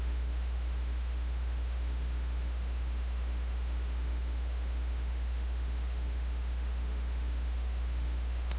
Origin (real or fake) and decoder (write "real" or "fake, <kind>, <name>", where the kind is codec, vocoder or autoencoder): fake, autoencoder, DAC-VAE